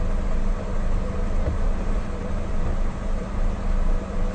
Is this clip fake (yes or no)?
yes